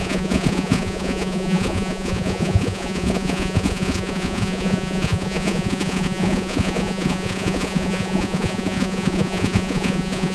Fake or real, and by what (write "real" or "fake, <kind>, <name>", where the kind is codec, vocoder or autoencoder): fake, vocoder, Vocos